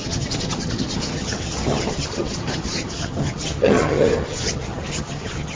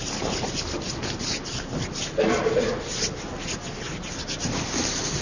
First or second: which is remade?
first